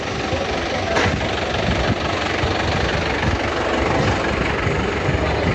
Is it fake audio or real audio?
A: real